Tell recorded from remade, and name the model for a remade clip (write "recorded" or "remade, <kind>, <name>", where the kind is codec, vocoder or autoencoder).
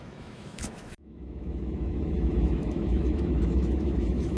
remade, autoencoder, DAC-VAE